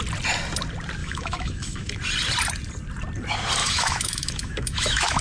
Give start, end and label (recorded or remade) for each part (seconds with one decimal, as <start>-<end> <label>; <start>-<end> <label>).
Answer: 0.0-1.0 recorded; 1.0-2.0 remade; 2.0-3.6 recorded; 3.6-5.2 remade